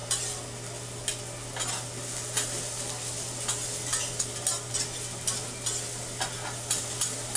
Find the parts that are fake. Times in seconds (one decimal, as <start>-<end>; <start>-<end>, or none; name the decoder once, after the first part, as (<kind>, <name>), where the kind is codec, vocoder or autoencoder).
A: none